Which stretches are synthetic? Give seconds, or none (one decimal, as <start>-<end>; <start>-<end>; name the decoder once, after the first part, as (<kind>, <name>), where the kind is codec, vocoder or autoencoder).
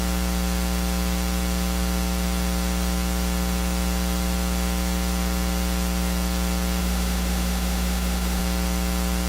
6.8-8.4 (autoencoder, DAC-VAE)